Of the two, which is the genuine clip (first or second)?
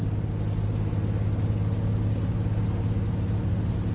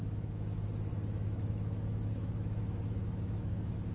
first